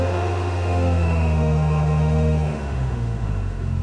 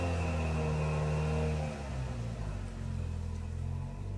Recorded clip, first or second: second